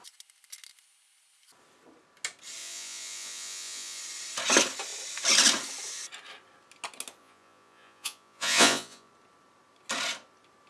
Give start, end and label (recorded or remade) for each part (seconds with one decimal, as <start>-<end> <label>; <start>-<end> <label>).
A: 0.0-2.6 recorded; 2.6-4.0 remade; 4.0-7.2 recorded; 7.2-9.1 remade; 9.1-10.7 recorded